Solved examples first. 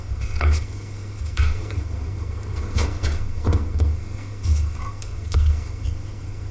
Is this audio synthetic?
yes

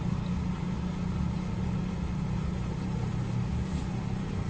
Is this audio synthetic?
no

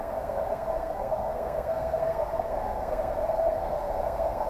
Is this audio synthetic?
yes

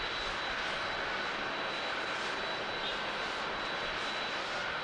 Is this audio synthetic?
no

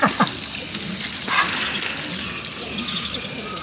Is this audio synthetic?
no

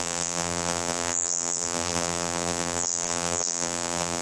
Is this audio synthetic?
yes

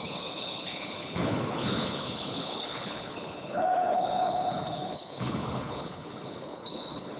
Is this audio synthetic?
yes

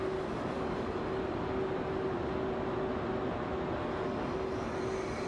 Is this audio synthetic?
no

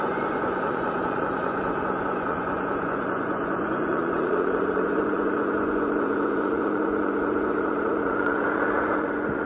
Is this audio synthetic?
yes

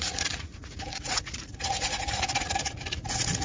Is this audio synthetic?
yes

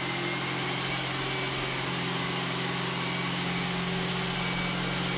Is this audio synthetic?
no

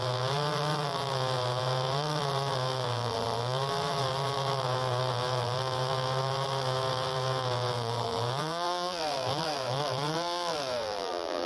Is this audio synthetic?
yes